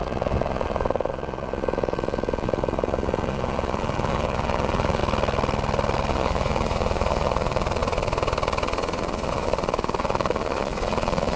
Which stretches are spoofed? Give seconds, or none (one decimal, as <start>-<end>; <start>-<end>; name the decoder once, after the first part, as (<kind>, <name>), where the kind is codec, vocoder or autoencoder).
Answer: 0.0-5.0 (vocoder, Vocos); 6.1-11.4